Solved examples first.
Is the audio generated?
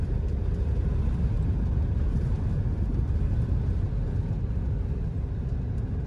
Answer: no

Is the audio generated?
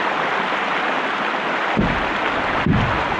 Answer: no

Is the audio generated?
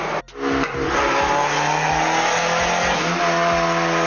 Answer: no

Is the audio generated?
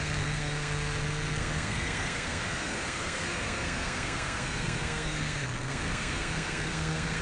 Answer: yes